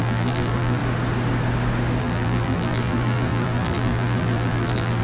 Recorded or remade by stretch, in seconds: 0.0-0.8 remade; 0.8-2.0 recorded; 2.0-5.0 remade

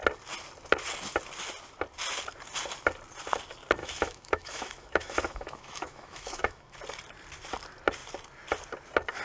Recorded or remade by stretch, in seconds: 0.0-3.8 recorded; 3.8-6.7 remade; 6.7-9.2 recorded

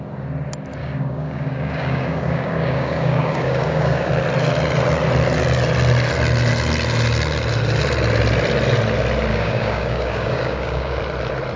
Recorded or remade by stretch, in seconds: 0.0-0.8 recorded; 0.8-4.1 remade; 4.1-9.3 recorded; 9.3-11.0 remade; 11.0-11.6 recorded

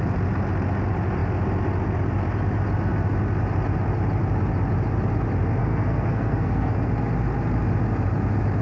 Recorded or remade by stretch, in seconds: 0.0-5.6 recorded; 5.6-6.9 remade; 6.9-8.6 recorded

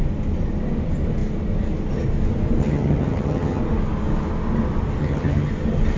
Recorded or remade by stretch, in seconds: 0.0-2.6 recorded; 2.6-3.6 remade; 3.6-5.0 recorded; 5.0-5.5 remade; 5.5-6.0 recorded

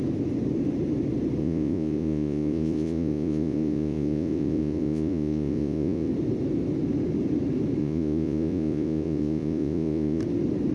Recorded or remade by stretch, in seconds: 0.0-1.4 recorded; 1.4-6.1 remade; 6.1-7.8 recorded; 7.8-10.2 remade; 10.2-10.7 recorded

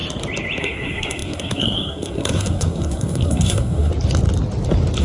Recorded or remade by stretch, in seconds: 0.0-0.6 recorded; 0.6-3.9 remade; 3.9-5.0 recorded